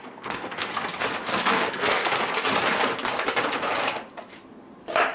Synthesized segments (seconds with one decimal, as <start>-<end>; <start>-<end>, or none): 0.0-0.7; 1.3-2.2